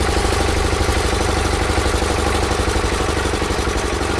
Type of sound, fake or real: real